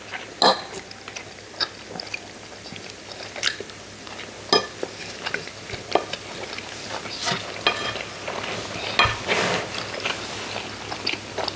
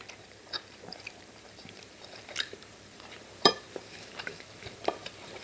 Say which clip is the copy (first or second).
second